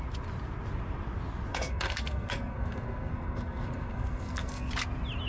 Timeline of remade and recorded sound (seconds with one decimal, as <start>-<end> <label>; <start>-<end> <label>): 0.0-1.5 recorded; 1.5-4.7 remade; 4.7-5.3 recorded